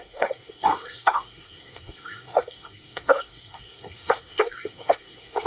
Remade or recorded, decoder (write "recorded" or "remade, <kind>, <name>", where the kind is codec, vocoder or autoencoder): remade, codec, SNAC